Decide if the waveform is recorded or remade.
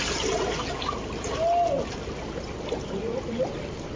recorded